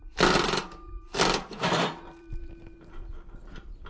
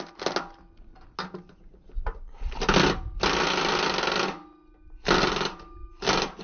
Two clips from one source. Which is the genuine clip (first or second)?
second